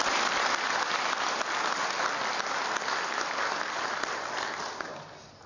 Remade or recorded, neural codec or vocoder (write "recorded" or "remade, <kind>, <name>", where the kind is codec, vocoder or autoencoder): remade, vocoder, BigVGAN v2